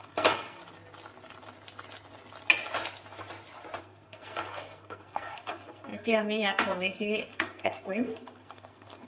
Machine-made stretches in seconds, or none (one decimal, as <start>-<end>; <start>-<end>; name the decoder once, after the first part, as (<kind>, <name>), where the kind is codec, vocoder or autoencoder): 0.0-0.6 (codec, SNAC); 3.8-9.1